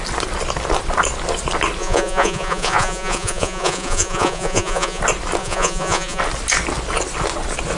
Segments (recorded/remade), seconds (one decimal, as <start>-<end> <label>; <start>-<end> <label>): 0.0-1.8 recorded; 1.8-5.0 remade; 5.0-5.4 recorded; 5.4-6.2 remade; 6.2-7.8 recorded